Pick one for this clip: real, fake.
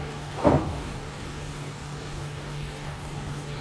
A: fake